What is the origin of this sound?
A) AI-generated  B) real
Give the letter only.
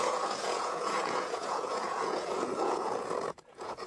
A